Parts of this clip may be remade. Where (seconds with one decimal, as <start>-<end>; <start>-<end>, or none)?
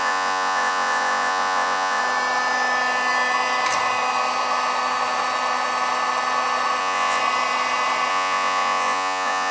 0.0-2.0; 6.8-7.2; 8.1-9.5